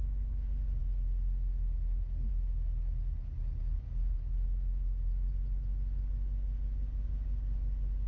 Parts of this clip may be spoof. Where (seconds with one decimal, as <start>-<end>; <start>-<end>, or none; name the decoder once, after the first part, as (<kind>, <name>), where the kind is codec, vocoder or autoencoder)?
none